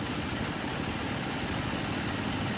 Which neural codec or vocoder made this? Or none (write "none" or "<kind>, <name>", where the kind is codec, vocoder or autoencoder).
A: none